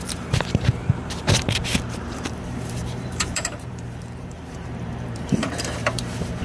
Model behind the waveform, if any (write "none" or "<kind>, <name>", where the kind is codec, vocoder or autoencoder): vocoder, BigVGAN v2